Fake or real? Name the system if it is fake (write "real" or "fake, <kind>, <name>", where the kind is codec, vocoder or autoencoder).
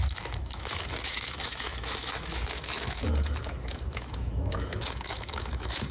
fake, autoencoder, DAC-VAE